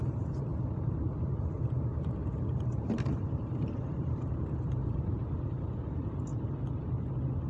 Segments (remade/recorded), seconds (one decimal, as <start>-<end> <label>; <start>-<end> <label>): 0.0-6.3 remade; 6.3-7.5 recorded